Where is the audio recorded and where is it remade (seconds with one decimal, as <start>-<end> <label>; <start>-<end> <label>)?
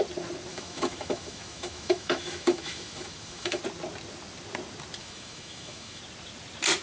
0.0-0.5 recorded; 0.5-3.6 remade; 3.6-5.0 recorded; 5.0-6.0 remade; 6.0-6.8 recorded